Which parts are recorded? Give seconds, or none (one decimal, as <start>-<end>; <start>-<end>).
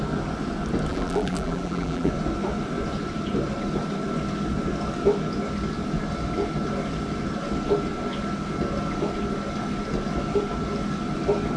0.0-0.9; 2.1-11.6